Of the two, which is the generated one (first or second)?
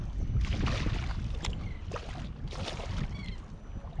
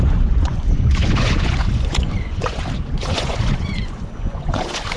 second